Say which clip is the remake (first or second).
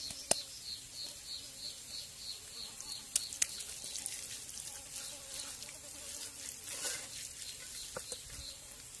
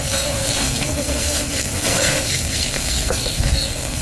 second